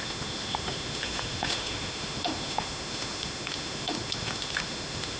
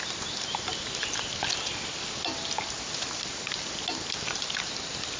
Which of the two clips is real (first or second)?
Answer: second